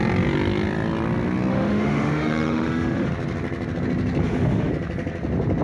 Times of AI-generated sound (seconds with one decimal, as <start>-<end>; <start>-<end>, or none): 1.5-3.1; 4.2-4.7